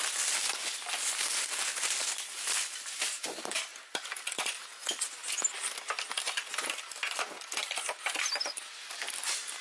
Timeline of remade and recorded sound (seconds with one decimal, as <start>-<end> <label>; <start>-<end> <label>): 0.0-9.6 recorded